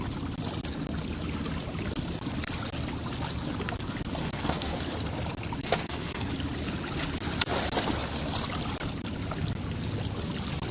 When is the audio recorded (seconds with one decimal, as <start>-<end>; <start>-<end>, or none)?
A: 0.0-4.2; 4.8-5.6; 6.3-10.7

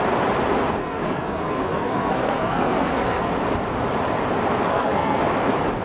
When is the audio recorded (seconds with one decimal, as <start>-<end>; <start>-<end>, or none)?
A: 0.0-0.8; 3.3-4.7; 5.2-5.8

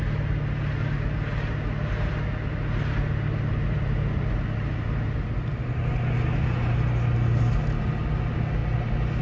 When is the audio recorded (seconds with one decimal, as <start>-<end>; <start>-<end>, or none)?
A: 0.0-9.2